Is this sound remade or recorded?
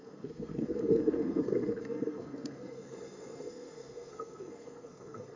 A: remade